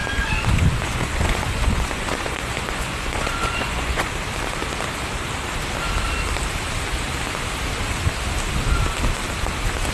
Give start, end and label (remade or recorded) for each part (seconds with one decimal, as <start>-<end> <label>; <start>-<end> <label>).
0.0-4.1 remade; 4.1-9.9 recorded